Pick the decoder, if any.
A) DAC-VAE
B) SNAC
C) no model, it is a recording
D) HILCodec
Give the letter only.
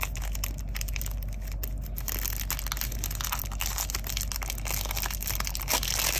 C